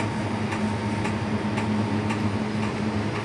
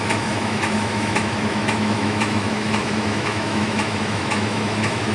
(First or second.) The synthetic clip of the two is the second